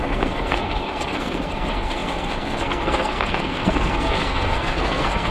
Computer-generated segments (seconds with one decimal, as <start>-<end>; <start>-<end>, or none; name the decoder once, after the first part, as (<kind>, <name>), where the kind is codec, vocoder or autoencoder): 0.0-5.3 (codec, SNAC)